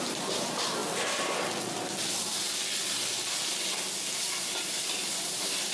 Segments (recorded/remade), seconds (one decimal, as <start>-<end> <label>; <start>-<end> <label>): 0.0-0.8 remade; 0.8-4.2 recorded; 4.2-5.7 remade